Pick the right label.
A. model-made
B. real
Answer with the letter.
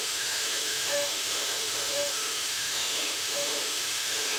A